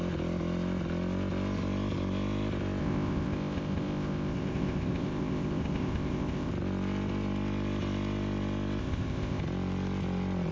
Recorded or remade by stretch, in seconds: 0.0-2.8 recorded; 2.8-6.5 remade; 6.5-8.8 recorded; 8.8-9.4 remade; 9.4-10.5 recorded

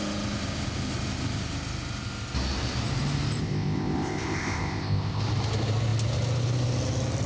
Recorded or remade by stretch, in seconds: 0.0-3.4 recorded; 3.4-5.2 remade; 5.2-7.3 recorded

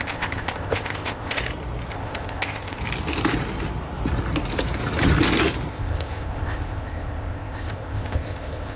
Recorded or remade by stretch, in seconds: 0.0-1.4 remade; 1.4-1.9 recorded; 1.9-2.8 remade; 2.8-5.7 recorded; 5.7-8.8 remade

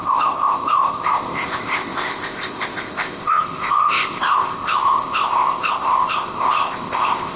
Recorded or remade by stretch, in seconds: 0.0-7.4 remade

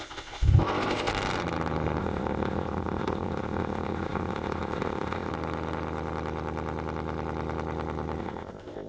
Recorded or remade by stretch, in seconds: 0.0-1.1 remade; 1.1-2.0 recorded; 2.0-5.3 remade; 5.3-8.2 recorded; 8.2-8.9 remade